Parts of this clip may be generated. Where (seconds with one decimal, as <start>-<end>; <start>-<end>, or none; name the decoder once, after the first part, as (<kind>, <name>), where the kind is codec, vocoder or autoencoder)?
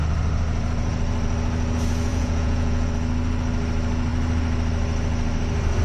2.1-2.9 (vocoder, Vocos)